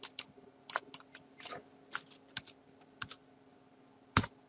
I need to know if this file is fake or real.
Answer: real